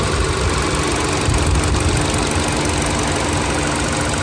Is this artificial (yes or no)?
no